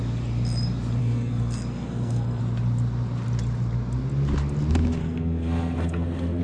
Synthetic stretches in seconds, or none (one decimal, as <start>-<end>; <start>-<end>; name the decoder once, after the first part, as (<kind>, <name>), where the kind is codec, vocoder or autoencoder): 1.0-2.4 (codec, SNAC); 5.0-6.4

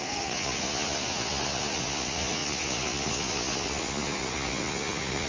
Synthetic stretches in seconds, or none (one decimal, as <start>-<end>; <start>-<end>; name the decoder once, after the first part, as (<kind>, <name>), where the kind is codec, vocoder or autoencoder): 0.0-5.3 (vocoder, Vocos)

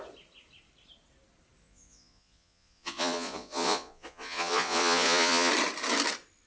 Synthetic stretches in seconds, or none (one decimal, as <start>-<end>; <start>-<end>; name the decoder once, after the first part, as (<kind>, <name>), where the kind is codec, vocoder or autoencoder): 1.6-5.5 (vocoder, Vocos)

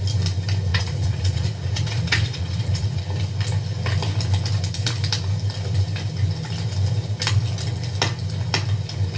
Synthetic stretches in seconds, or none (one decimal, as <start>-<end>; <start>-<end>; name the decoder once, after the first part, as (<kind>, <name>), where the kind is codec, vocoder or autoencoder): 0.7-3.0 (vocoder, Vocos)

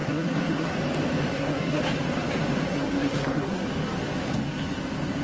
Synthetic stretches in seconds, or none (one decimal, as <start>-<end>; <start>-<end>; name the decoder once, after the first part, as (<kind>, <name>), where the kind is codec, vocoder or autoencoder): 0.0-0.7 (codec, SNAC); 1.3-1.8; 2.7-3.7

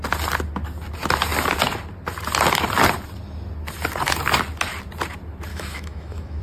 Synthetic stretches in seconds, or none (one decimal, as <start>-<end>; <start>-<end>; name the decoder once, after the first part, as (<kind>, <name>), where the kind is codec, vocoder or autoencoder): 5.5-6.4 (autoencoder, DAC-VAE)

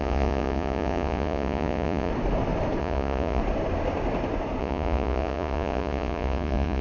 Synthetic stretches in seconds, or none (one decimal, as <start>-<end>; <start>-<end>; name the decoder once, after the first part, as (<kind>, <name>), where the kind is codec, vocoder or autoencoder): 0.0-2.1 (vocoder, Vocos); 2.8-3.4; 4.6-6.8

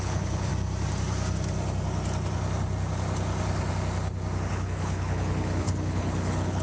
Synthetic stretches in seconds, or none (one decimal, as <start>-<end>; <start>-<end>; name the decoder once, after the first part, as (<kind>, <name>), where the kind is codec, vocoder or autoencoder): 0.0-0.5 (codec, HILCodec); 4.5-6.6